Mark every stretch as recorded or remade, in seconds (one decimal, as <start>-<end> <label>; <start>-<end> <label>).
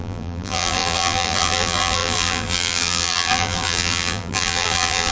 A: 0.0-5.1 remade